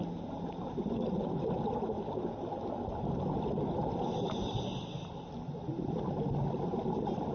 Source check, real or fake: real